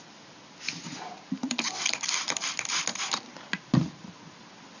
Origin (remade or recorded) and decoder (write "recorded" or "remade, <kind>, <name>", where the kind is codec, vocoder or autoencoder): recorded